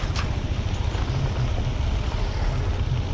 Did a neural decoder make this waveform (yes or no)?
no